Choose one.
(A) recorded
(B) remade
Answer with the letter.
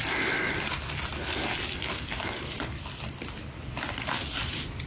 A